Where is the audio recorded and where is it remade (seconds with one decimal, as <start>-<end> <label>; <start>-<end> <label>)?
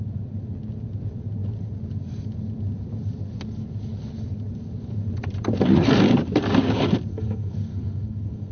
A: 0.0-7.1 recorded; 7.1-8.5 remade